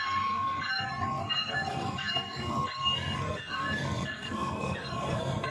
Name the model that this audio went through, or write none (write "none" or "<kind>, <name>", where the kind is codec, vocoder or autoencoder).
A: codec, SNAC